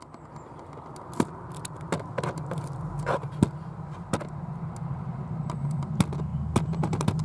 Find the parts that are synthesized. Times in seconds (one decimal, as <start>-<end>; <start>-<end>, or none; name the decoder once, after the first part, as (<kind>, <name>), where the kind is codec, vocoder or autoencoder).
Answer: none